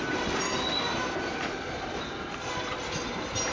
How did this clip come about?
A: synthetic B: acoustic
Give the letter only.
B